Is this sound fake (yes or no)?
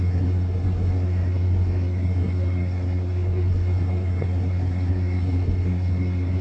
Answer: yes